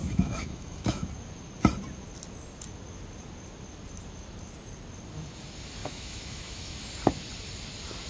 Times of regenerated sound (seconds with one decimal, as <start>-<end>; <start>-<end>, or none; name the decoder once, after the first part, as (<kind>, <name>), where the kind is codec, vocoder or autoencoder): 0.0-1.1 (autoencoder, DAC-VAE); 5.8-6.8